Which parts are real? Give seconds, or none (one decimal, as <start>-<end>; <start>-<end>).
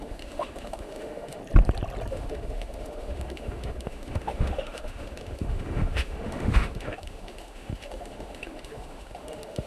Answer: 1.4-2.1